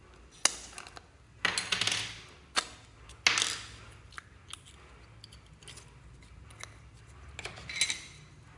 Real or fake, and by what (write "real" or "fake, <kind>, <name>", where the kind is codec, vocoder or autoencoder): real